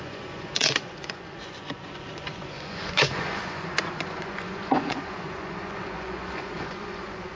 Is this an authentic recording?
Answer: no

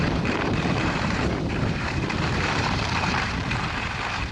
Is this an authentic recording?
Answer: no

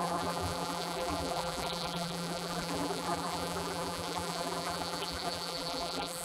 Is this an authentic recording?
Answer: no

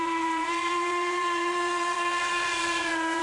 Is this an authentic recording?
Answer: no